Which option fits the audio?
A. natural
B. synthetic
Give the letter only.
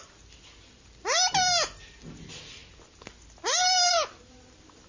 A